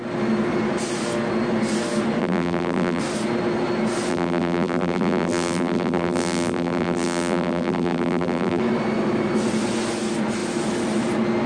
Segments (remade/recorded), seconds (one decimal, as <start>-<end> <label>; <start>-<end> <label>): 0.0-2.2 recorded; 2.2-3.0 remade; 3.0-4.1 recorded; 4.1-8.6 remade; 8.6-11.5 recorded